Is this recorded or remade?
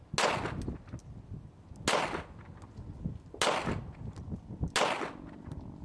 recorded